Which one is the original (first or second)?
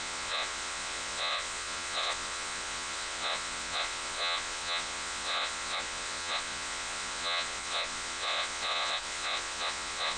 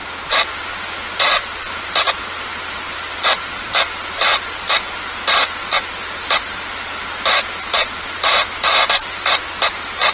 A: second